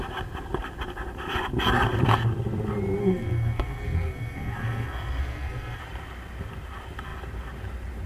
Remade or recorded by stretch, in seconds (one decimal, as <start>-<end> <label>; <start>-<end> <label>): 0.0-3.0 recorded; 3.0-5.8 remade; 5.8-8.1 recorded